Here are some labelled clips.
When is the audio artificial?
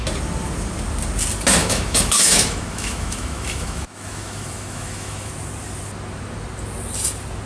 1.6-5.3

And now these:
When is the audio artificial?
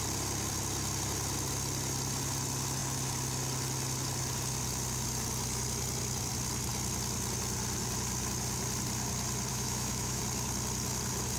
9.5-10.2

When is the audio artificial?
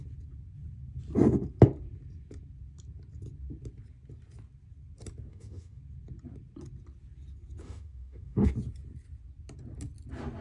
5.3-5.8; 7.6-8.5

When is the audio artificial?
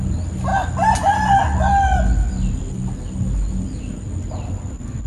none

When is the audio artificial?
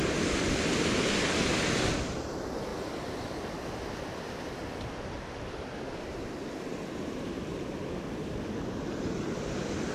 none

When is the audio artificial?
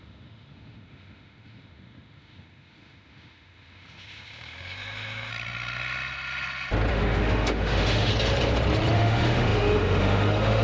0.0-5.3; 6.9-8.1; 8.9-10.6